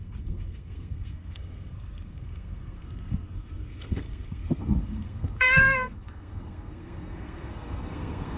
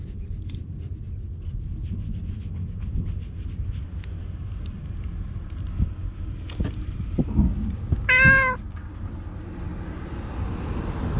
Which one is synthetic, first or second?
first